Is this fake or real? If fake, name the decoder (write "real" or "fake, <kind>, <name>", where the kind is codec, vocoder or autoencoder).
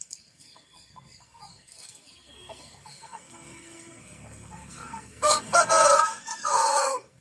fake, codec, SNAC